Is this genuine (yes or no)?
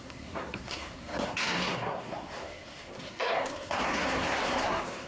no